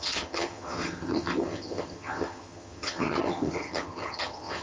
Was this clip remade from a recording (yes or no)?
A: yes